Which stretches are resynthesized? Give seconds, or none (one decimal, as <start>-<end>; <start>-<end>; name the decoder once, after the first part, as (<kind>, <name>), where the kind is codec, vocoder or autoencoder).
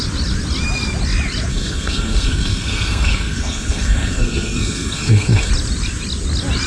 1.5-5.5 (codec, SNAC)